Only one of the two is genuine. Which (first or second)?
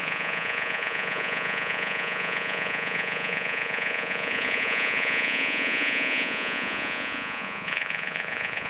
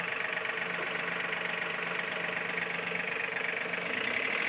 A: second